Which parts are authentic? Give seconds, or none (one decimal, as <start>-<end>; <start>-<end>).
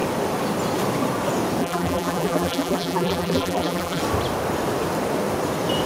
0.0-1.6; 4.0-5.9